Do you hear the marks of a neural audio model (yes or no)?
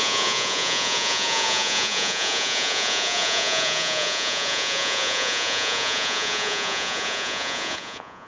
yes